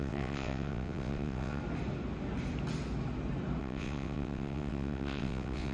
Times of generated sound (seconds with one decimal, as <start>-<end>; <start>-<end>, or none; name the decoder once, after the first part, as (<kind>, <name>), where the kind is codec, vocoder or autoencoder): 0.0-1.6 (vocoder, WaveNeXt); 3.6-5.7